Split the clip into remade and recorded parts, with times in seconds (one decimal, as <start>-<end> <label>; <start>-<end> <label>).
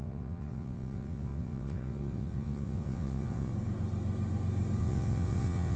0.0-3.5 remade; 3.5-4.8 recorded; 4.8-5.8 remade